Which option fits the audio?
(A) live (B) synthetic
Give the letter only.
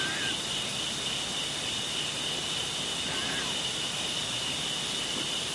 A